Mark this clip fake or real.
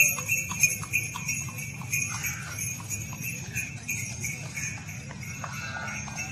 real